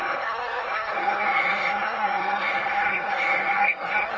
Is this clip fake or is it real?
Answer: fake